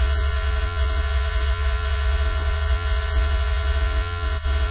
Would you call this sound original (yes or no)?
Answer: no